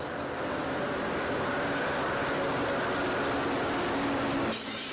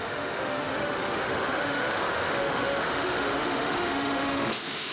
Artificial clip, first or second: second